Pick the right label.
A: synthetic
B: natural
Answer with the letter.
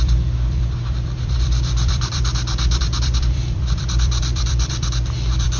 A